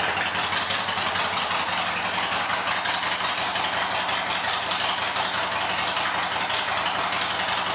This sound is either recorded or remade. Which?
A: recorded